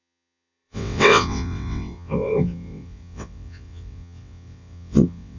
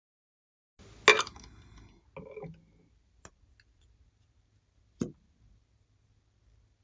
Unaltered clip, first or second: second